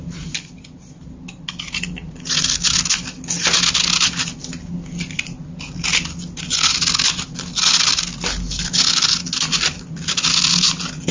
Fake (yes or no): no